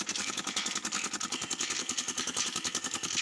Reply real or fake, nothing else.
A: fake